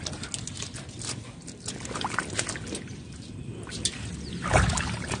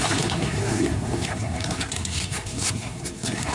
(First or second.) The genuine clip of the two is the first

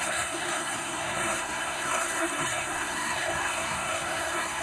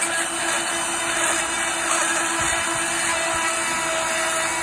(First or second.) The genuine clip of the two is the second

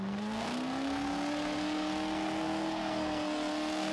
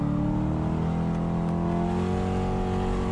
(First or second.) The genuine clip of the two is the second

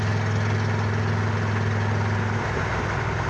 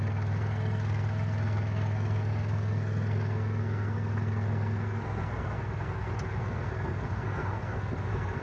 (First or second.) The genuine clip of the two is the first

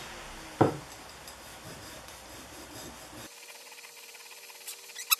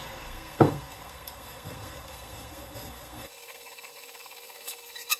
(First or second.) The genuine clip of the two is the first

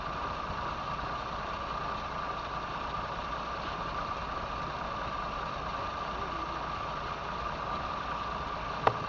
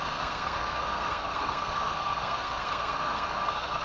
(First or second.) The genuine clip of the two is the first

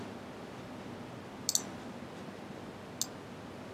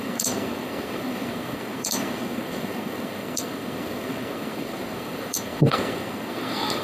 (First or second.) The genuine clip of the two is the first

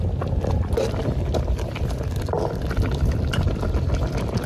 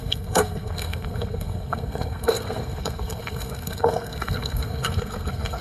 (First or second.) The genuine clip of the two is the first